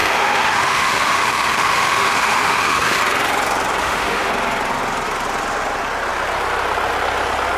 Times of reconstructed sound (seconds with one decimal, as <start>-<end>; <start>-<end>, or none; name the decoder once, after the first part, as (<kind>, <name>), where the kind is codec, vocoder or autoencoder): 0.0-3.0 (autoencoder, DAC-VAE); 3.8-4.3